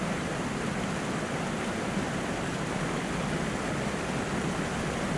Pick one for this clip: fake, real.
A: real